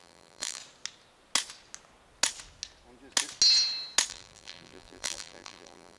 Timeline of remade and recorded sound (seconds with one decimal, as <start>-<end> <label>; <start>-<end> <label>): 0.0-0.6 remade; 0.6-4.1 recorded; 4.1-6.0 remade